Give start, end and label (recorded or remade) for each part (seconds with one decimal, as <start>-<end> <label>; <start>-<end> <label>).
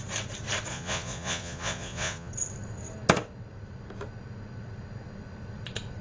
0.0-0.7 recorded; 0.7-2.3 remade; 2.3-6.0 recorded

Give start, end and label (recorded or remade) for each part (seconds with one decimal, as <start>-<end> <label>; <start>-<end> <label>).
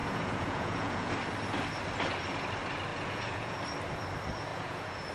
0.0-1.1 remade; 1.1-2.9 recorded; 2.9-3.6 remade; 3.6-4.5 recorded; 4.5-5.1 remade